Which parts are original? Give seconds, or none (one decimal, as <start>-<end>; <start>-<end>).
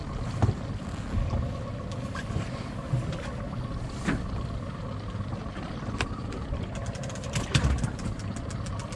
0.0-5.4; 7.6-9.0